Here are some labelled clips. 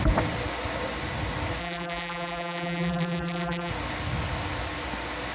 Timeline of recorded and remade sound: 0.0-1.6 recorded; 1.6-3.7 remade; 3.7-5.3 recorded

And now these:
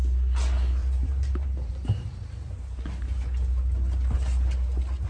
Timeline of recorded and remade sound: 0.0-0.8 recorded; 0.8-2.6 remade; 2.6-5.1 recorded

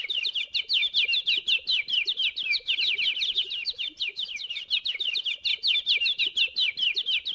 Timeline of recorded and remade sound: 0.0-0.8 recorded; 0.8-4.8 remade; 4.8-5.5 recorded; 5.5-6.2 remade; 6.2-7.3 recorded

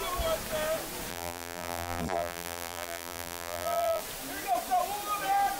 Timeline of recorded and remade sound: 0.0-1.1 recorded; 1.1-4.0 remade; 4.0-5.6 recorded

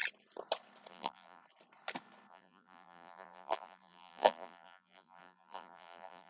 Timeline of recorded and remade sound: 0.0-0.9 recorded; 0.9-1.4 remade; 1.4-2.3 recorded; 2.3-6.3 remade